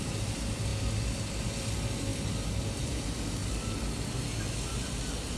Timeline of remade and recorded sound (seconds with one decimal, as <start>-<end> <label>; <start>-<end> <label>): 0.0-0.7 remade; 0.7-1.3 recorded; 1.3-2.1 remade; 2.1-2.6 recorded; 2.6-3.4 remade; 3.4-5.4 recorded